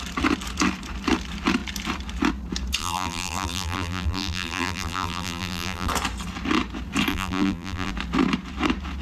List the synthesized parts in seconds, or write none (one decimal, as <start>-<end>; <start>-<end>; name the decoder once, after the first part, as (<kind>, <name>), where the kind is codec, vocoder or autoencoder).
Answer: 2.8-5.9 (vocoder, BigVGAN v2); 7.1-7.9